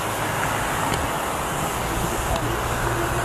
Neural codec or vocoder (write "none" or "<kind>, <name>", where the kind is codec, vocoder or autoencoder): none